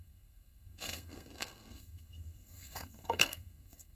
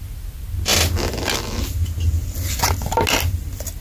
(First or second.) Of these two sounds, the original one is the second